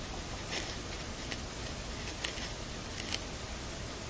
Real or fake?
fake